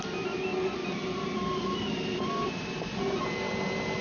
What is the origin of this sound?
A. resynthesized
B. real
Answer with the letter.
B